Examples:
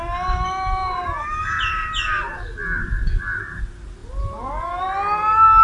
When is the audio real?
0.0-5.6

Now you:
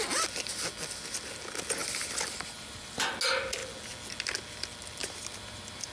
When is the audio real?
0.0-1.8; 3.1-5.0

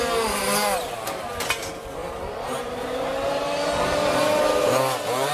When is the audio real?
0.0-2.0; 4.7-5.3